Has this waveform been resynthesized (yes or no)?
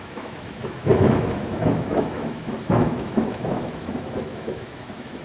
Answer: yes